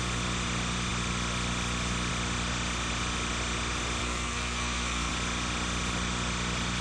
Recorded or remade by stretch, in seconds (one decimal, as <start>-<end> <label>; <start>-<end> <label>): 0.0-4.0 recorded; 4.0-5.1 remade; 5.1-6.8 recorded